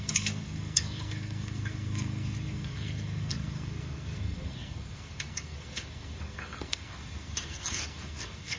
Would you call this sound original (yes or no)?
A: no